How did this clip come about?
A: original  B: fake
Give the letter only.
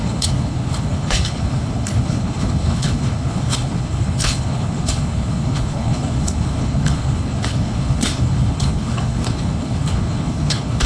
B